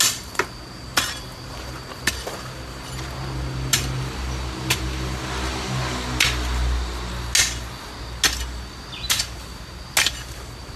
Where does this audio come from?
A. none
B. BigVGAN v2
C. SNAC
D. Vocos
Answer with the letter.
A